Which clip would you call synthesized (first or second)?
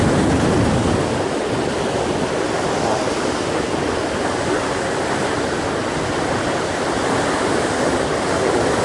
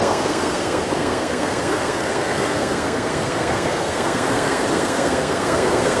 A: second